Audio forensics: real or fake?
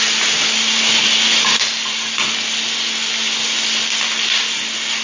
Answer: real